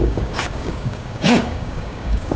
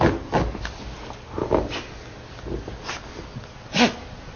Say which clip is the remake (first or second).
first